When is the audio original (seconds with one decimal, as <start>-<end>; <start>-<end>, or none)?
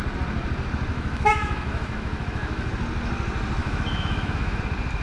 0.0-0.9; 2.7-3.6; 4.6-5.0